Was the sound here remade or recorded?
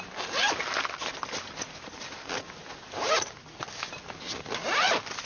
recorded